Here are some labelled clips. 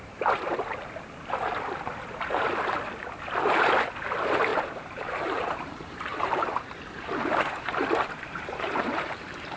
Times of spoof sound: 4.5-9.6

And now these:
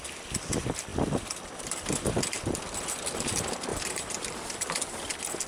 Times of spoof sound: 3.7-4.5